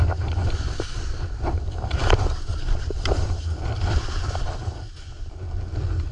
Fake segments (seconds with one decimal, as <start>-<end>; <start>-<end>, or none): none